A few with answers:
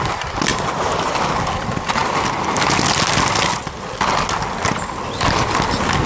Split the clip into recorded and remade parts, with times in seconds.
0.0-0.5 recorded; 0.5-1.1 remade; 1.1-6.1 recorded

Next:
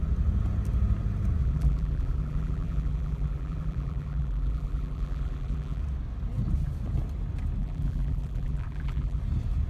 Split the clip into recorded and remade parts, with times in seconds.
0.0-1.4 recorded; 1.4-5.8 remade; 5.8-7.6 recorded; 7.6-9.2 remade; 9.2-9.7 recorded

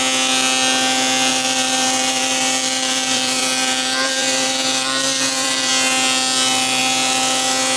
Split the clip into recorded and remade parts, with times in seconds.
0.0-1.3 recorded; 1.3-5.7 remade; 5.7-7.8 recorded

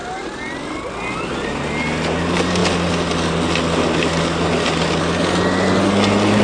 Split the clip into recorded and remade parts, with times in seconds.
0.0-1.3 remade; 1.3-6.4 recorded